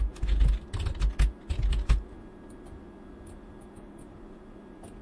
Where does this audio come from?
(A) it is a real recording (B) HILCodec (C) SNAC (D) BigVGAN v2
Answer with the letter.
A